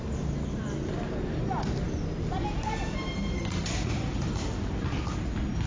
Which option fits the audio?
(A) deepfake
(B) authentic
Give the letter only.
B